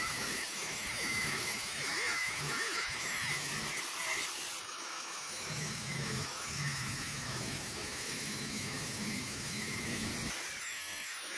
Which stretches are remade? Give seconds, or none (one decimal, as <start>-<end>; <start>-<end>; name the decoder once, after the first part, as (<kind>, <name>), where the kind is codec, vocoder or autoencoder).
0.0-3.5 (autoencoder, DAC-VAE); 4.6-10.1; 10.6-11.4